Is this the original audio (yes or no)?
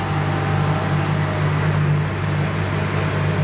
yes